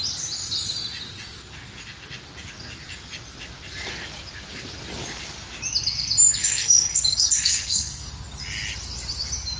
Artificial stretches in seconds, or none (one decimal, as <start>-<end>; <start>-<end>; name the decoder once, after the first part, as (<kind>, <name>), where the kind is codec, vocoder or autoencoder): 6.4-8.1 (codec, SNAC)